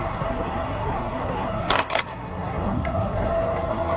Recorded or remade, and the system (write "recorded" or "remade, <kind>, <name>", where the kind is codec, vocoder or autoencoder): remade, codec, SNAC